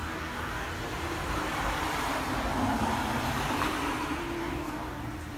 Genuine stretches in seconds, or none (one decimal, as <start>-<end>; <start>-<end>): 0.7-4.4; 5.0-5.4